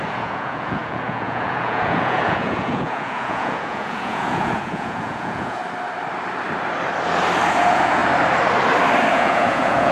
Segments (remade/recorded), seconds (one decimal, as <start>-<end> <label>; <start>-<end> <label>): 0.0-5.6 remade; 5.6-7.5 recorded; 7.5-8.0 remade; 8.0-9.1 recorded; 9.1-9.9 remade